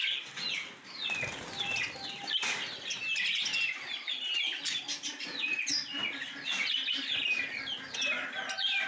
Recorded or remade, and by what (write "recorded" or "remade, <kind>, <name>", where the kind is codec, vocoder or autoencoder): recorded